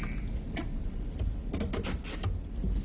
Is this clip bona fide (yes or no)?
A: yes